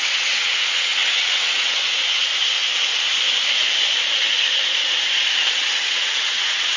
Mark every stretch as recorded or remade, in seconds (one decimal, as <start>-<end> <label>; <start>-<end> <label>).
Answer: 0.0-2.3 remade; 2.3-5.5 recorded; 5.5-6.8 remade